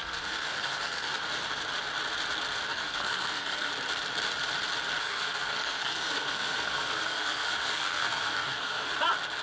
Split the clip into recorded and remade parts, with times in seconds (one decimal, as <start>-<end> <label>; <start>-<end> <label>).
0.0-1.2 remade; 1.2-2.7 recorded; 2.7-3.7 remade; 3.7-5.0 recorded; 5.0-8.9 remade; 8.9-9.4 recorded